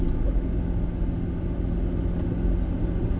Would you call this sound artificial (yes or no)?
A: no